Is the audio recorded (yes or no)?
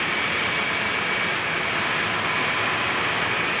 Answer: yes